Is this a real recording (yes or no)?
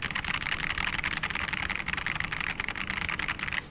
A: yes